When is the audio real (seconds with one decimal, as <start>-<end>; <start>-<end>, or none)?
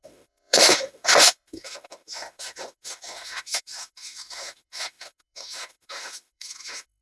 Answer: none